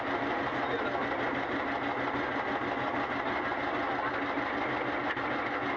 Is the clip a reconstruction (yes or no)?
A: no